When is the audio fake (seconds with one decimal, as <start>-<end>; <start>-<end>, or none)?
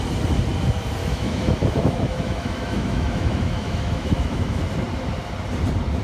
1.0-4.6